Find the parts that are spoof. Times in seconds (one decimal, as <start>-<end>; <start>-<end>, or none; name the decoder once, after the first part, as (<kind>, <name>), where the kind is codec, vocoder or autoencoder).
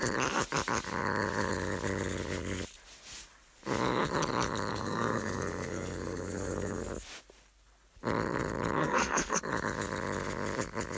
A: 4.7-6.9 (codec, SNAC); 8.8-9.4